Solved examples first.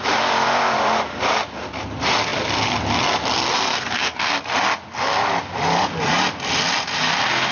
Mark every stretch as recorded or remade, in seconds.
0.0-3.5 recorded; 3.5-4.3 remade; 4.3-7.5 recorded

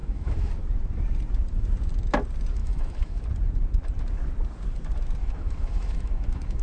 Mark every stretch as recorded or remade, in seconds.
0.0-0.5 remade; 0.5-2.6 recorded; 2.6-3.2 remade; 3.2-5.2 recorded; 5.2-6.6 remade

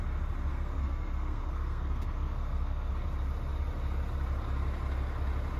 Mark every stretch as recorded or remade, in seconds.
0.0-0.5 recorded; 0.5-2.9 remade; 2.9-5.6 recorded

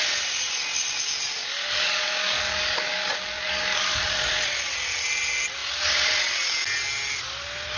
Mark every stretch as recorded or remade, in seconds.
0.0-1.4 recorded; 1.4-4.3 remade; 4.3-7.8 recorded

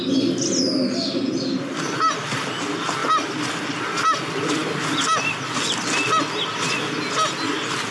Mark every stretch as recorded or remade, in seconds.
0.0-7.9 recorded

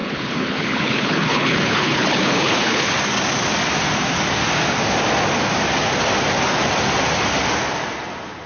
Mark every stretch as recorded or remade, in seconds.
0.0-2.9 remade; 2.9-8.5 recorded